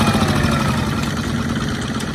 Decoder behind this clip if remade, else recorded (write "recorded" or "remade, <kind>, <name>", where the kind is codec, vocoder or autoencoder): recorded